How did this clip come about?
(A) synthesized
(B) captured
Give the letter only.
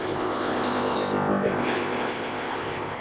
A